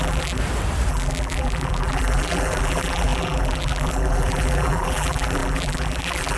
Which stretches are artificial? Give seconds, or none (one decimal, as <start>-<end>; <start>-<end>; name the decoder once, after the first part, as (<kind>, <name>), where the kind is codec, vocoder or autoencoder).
0.0-0.4 (vocoder, BigVGAN v2); 0.9-6.4